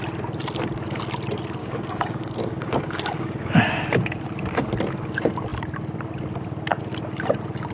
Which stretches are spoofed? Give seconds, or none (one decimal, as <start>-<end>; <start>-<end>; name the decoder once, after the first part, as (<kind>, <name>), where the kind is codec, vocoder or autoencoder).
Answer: 1.6-3.6 (codec, DAC)